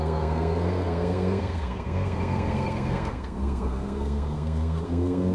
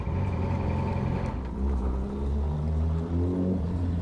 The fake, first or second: first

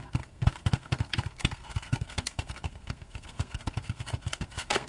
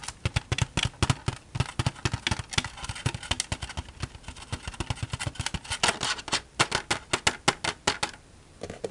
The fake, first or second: first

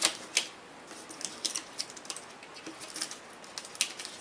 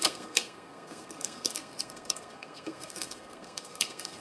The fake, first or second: second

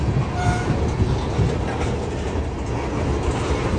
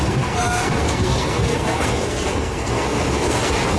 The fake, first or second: second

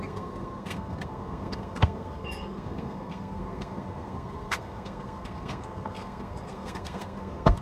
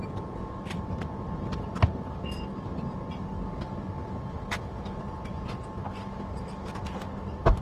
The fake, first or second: first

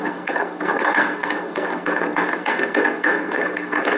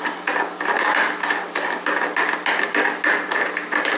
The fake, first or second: first